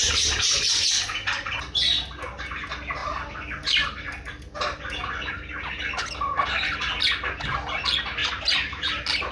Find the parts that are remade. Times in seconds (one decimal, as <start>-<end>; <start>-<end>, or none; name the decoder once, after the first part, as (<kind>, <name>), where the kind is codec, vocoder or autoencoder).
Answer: 0.0-1.6 (vocoder, BigVGAN v2); 8.2-8.9